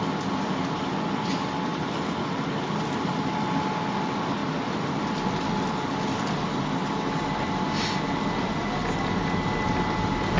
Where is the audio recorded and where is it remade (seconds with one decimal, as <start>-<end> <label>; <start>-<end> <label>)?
0.0-10.4 recorded